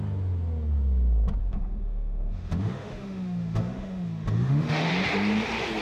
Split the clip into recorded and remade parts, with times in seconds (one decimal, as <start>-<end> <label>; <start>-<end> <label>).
0.0-1.4 recorded; 1.4-4.9 remade; 4.9-5.8 recorded